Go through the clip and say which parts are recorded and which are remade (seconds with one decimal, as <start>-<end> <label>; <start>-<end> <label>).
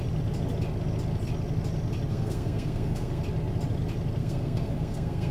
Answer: 0.0-2.1 recorded; 2.1-3.2 remade; 3.2-4.2 recorded; 4.2-5.3 remade